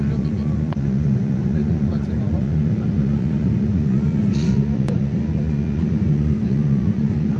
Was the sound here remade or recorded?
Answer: remade